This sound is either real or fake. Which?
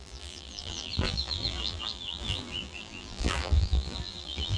fake